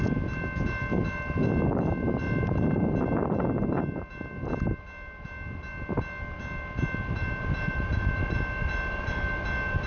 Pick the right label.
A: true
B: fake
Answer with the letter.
A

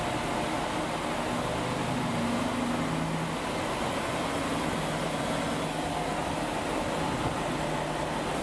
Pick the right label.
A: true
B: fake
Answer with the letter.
A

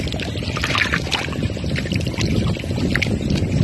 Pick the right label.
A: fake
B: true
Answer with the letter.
B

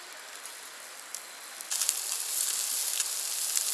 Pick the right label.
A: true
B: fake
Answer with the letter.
A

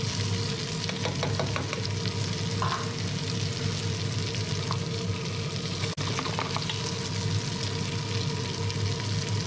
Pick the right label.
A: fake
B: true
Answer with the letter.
B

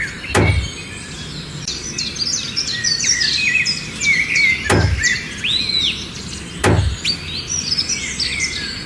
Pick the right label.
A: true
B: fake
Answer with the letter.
A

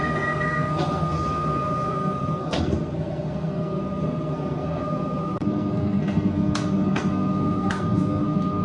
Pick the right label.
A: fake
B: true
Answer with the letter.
A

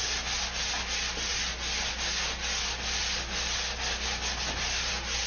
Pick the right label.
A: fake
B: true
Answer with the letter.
B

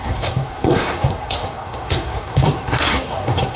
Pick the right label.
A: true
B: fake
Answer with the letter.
B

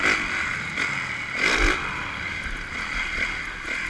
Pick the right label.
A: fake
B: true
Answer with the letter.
B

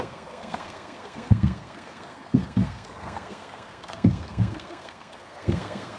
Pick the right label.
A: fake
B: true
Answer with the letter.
A